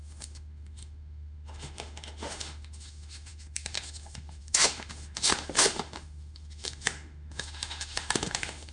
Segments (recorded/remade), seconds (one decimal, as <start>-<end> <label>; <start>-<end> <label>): 0.0-8.7 remade